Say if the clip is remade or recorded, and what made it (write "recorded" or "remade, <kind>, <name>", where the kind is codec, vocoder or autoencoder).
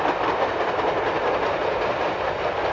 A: recorded